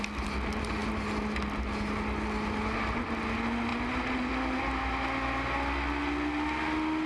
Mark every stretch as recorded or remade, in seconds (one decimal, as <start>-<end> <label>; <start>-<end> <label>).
0.0-7.1 recorded